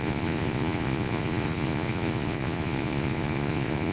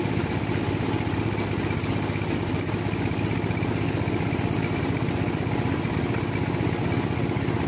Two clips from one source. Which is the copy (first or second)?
first